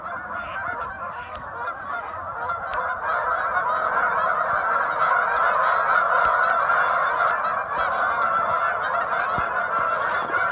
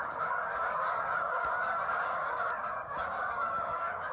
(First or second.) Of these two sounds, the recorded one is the first